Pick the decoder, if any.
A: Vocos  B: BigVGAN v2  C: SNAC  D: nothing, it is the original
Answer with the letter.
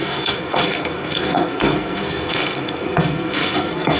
C